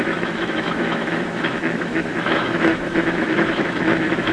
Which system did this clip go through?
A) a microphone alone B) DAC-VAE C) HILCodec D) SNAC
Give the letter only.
B